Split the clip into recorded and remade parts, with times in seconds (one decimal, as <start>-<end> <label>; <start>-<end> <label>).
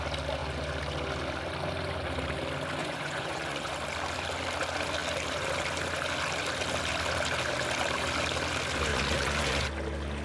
0.0-2.8 recorded; 2.8-3.7 remade; 3.7-8.9 recorded; 8.9-9.6 remade; 9.6-10.2 recorded